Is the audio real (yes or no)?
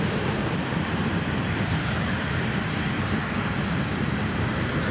no